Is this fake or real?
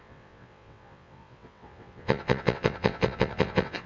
fake